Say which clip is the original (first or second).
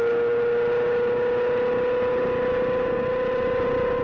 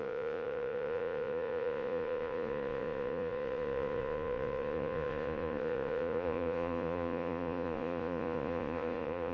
first